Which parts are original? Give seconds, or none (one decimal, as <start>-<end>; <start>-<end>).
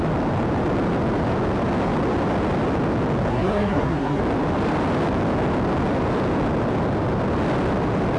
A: 0.0-3.3; 4.2-8.2